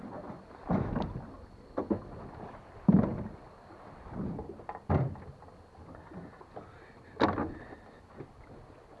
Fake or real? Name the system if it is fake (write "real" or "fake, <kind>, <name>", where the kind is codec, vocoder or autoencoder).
real